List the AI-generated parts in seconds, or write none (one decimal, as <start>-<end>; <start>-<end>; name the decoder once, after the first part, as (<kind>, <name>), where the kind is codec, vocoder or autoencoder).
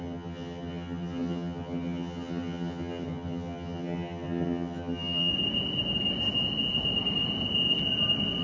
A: 0.0-5.3 (vocoder, HiFi-GAN)